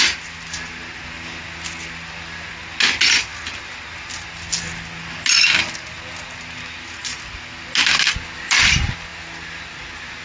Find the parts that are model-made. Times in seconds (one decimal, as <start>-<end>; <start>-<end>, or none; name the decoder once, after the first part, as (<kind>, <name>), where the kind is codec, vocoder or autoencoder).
none